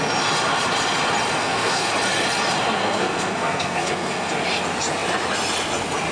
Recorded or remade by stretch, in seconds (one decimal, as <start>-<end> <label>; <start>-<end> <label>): 0.0-1.4 recorded; 1.4-1.9 remade; 1.9-2.8 recorded; 2.8-4.3 remade; 4.3-6.1 recorded

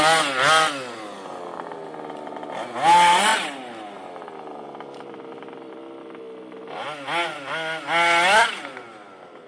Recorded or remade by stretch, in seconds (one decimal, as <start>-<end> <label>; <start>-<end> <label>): 0.0-9.5 recorded